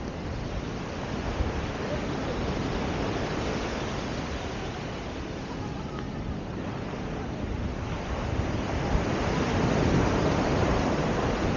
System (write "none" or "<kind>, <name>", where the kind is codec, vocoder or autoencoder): none